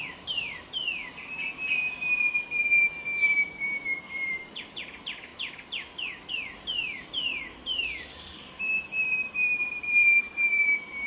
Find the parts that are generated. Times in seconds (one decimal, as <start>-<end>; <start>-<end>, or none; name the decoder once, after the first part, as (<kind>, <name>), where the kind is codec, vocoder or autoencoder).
0.0-0.8 (vocoder, BigVGAN v2); 2.6-5.3; 6.3-11.1